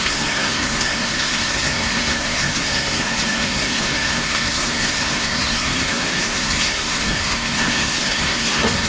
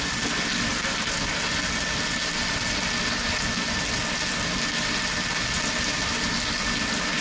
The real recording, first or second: second